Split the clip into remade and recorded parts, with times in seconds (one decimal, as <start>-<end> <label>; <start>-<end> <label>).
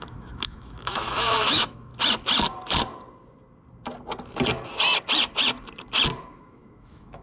0.0-1.9 remade; 1.9-6.2 recorded; 6.2-7.2 remade